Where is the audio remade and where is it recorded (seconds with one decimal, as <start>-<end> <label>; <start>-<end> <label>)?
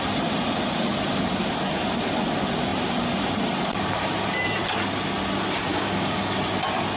0.0-5.7 recorded; 5.7-6.4 remade; 6.4-7.0 recorded